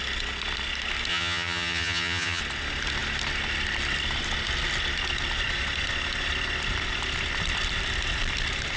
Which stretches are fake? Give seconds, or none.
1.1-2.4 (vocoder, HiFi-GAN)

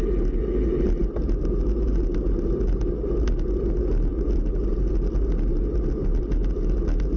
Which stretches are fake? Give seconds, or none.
1.0-1.9 (vocoder, BigVGAN v2)

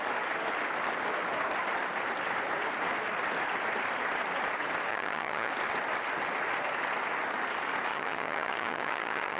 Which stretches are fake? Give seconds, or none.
4.9-5.5 (vocoder, HiFi-GAN); 7.9-9.4

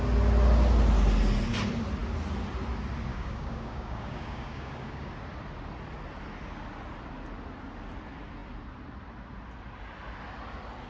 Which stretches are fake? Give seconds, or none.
3.1-5.1 (codec, DAC)

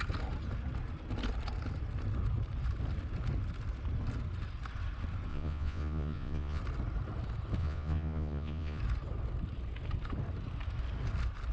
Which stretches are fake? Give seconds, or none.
5.3-6.6 (vocoder, Vocos); 7.6-8.8

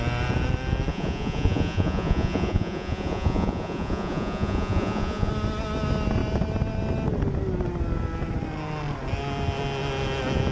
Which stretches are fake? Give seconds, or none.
0.9-5.3 (vocoder, Vocos)

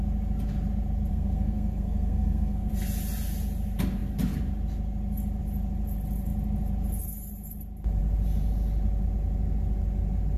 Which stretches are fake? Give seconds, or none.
1.1-2.7 (codec, SNAC)